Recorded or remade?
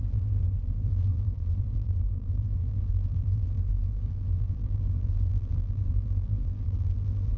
remade